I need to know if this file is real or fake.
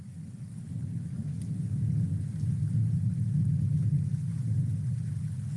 real